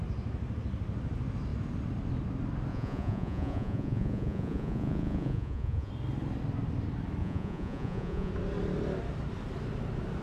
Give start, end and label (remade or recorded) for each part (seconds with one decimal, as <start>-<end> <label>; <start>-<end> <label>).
0.0-2.7 recorded; 2.7-5.9 remade; 5.9-7.2 recorded; 7.2-8.3 remade; 8.3-10.2 recorded